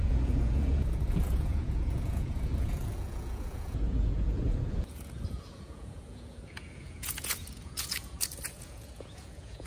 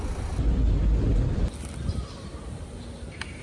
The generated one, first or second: first